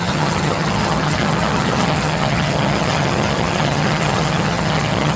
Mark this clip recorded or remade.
remade